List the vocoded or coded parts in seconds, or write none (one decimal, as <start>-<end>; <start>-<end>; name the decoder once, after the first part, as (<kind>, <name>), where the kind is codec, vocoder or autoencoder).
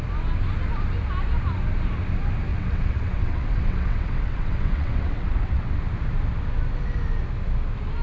2.5-5.8 (vocoder, WaveNeXt)